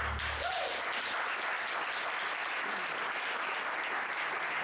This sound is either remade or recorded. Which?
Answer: recorded